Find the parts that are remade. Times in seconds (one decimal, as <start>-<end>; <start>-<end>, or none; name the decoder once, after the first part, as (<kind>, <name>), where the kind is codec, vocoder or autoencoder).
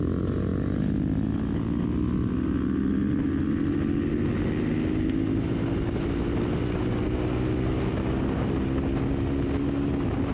none